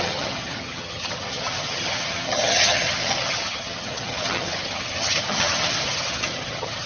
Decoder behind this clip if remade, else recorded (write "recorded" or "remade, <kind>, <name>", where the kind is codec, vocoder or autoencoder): remade, vocoder, HiFi-GAN